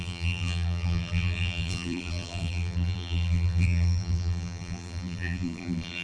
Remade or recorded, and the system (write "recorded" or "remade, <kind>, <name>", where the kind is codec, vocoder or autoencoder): remade, vocoder, BigVGAN v2